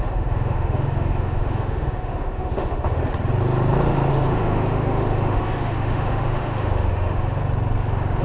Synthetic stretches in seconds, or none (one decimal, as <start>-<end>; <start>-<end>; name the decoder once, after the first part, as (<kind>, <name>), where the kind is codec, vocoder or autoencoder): 0.0-3.0 (autoencoder, DAC-VAE); 4.1-7.4